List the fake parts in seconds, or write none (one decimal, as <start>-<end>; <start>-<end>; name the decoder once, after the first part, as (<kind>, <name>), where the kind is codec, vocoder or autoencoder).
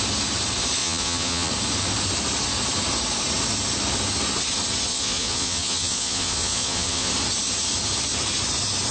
0.8-1.5 (vocoder, Vocos); 4.9-7.1